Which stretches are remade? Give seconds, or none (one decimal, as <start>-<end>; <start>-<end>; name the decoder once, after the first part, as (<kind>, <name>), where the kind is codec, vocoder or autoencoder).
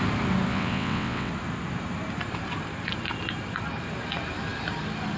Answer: 0.5-1.3 (vocoder, WaveNeXt)